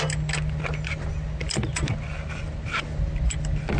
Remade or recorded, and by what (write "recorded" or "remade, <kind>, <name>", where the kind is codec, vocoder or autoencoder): recorded